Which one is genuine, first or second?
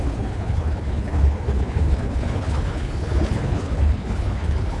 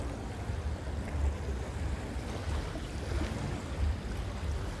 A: second